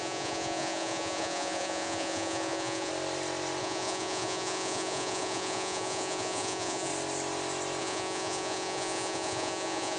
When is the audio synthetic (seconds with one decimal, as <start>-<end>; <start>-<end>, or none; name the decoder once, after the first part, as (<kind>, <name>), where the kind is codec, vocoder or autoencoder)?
0.0-2.9 (vocoder, Vocos); 3.6-6.9; 7.8-10.0